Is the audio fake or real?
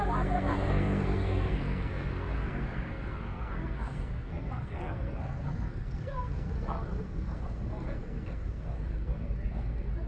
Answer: fake